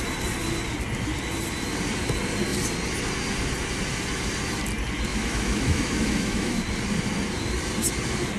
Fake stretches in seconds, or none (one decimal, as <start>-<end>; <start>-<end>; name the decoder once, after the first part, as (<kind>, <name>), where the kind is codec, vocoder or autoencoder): 5.1-6.6 (autoencoder, DAC-VAE)